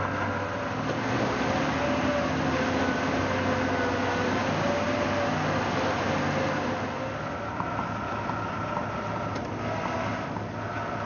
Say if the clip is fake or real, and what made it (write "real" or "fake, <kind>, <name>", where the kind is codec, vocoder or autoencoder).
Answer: real